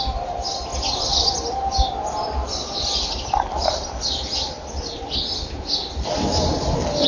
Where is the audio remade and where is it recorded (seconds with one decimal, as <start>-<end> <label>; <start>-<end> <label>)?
0.0-7.1 recorded

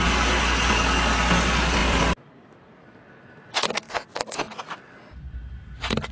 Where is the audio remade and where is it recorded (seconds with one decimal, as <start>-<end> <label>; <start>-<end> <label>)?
0.0-6.1 recorded

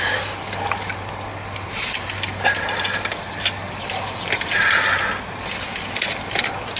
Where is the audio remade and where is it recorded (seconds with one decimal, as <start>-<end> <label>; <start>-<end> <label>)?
0.0-6.8 recorded

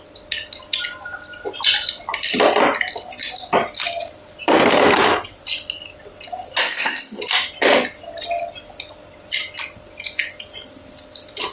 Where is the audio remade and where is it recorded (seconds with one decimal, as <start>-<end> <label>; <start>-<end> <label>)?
0.0-6.6 recorded; 6.6-7.2 remade; 7.2-11.5 recorded